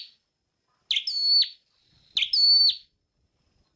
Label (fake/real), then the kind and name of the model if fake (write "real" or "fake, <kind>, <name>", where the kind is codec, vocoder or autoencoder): real